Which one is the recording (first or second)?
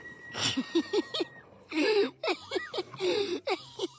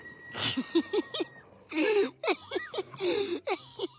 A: second